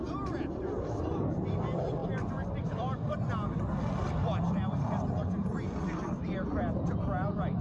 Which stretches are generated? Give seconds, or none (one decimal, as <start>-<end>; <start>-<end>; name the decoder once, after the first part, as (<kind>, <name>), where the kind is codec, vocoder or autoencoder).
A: none

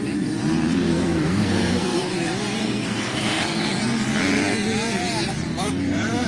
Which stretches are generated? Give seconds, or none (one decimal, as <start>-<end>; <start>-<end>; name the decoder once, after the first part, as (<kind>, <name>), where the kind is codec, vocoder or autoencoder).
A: 0.7-2.1 (codec, SNAC); 2.6-3.8

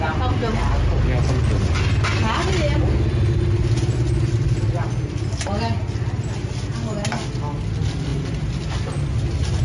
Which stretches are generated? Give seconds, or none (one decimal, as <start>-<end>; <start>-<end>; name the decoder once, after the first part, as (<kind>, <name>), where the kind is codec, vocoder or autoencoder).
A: none

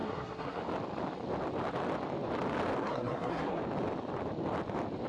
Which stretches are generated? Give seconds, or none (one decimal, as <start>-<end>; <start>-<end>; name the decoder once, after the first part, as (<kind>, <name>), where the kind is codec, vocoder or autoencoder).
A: 0.0-0.6 (codec, SNAC); 2.8-3.6

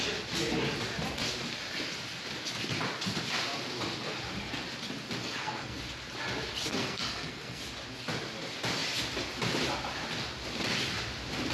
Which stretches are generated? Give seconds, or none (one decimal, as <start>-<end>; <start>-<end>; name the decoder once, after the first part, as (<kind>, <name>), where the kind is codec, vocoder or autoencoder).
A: 5.2-5.8 (codec, SNAC); 6.7-7.6

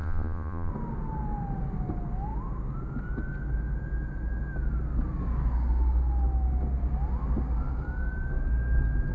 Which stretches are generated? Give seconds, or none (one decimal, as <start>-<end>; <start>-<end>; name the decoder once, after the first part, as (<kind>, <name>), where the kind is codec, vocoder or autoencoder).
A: 0.0-0.7 (vocoder, Vocos)